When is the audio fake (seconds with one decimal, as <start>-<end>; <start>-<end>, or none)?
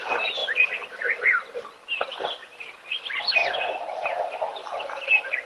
none